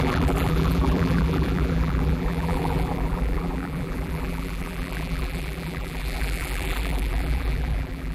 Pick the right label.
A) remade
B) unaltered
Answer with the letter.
A